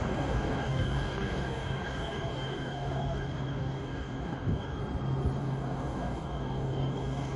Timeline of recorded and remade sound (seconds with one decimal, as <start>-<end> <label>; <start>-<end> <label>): 0.0-4.8 remade; 4.8-5.4 recorded; 5.4-7.4 remade

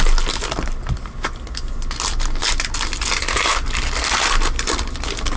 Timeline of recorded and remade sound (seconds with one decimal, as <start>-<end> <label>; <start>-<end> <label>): 0.0-5.4 recorded

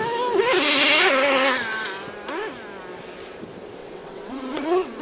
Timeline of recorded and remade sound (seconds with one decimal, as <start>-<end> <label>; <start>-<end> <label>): 0.0-3.8 recorded; 3.8-5.0 remade

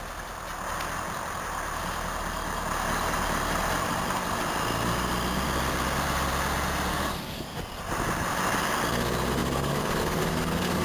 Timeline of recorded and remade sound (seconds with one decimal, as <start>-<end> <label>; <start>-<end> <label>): 0.0-6.9 recorded; 6.9-7.6 remade; 7.6-9.4 recorded; 9.4-10.8 remade

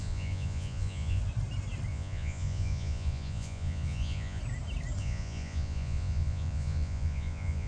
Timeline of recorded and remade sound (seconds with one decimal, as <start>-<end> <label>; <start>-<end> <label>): 0.0-1.2 remade; 1.2-1.9 recorded; 1.9-4.4 remade; 4.4-5.0 recorded; 5.0-7.7 remade